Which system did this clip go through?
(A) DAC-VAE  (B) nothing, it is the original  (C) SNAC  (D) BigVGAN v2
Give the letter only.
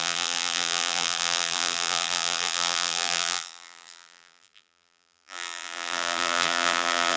D